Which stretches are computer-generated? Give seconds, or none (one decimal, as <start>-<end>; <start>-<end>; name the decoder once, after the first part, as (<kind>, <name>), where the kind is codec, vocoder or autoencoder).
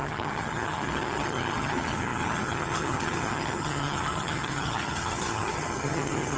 0.0-6.4 (vocoder, HiFi-GAN)